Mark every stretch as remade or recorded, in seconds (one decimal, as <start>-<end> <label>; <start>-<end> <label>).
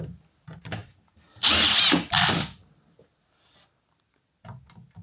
0.0-5.0 recorded